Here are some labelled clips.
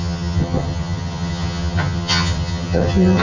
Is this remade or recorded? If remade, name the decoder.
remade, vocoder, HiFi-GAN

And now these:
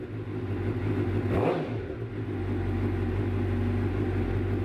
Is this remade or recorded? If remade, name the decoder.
recorded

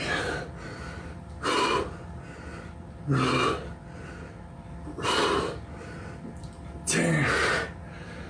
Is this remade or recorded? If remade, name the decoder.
recorded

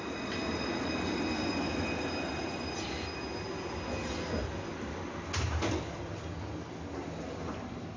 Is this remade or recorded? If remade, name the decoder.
recorded